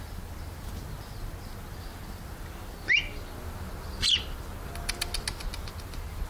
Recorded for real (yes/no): yes